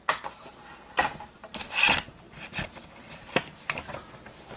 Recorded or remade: recorded